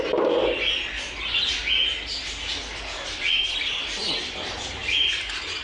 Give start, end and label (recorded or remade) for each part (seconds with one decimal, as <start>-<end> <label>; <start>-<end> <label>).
0.0-5.6 recorded